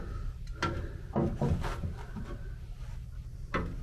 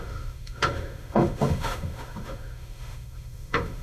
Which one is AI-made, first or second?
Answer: second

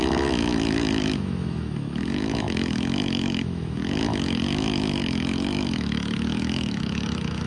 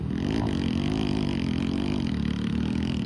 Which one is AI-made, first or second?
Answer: first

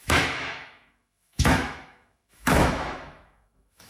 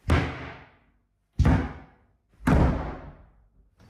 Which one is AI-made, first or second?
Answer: first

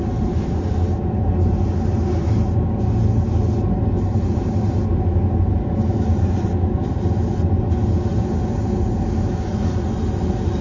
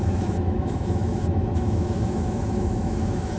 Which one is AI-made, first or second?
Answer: second